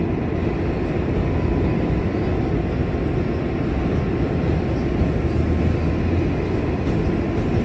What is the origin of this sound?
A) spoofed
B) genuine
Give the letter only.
B